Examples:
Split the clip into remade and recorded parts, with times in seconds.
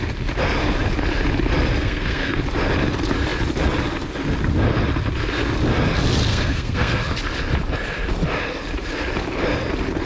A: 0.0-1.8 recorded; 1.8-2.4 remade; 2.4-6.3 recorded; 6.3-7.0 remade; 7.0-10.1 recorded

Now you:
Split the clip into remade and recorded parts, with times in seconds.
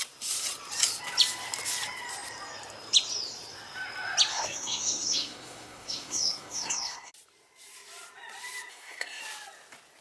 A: 0.0-4.3 recorded; 4.3-7.1 remade; 7.1-8.7 recorded; 8.7-9.2 remade; 9.2-10.0 recorded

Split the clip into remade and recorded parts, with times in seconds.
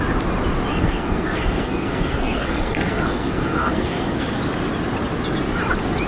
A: 0.0-0.7 recorded; 0.7-4.4 remade; 4.4-6.1 recorded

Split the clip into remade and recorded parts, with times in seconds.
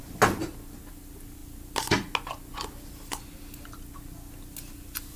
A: 0.0-5.2 recorded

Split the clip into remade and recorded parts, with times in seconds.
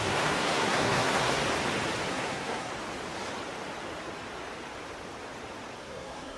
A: 0.0-1.4 remade; 1.4-2.1 recorded; 2.1-2.7 remade; 2.7-5.8 recorded; 5.8-6.4 remade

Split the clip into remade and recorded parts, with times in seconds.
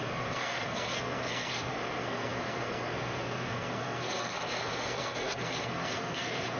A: 0.0-6.6 remade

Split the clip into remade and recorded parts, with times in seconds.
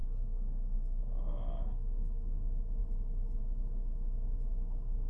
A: 0.0-1.0 remade; 1.0-5.1 recorded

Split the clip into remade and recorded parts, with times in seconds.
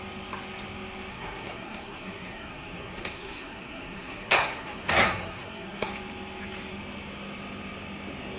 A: 0.0-1.1 recorded; 1.1-5.9 remade; 5.9-8.4 recorded